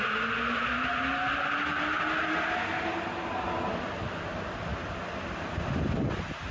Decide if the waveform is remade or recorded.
recorded